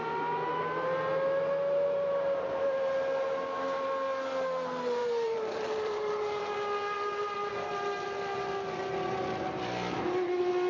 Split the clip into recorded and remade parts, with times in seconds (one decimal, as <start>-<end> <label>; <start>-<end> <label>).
0.0-5.0 recorded; 5.0-6.4 remade; 6.4-10.7 recorded